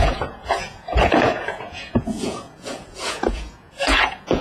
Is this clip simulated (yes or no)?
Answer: yes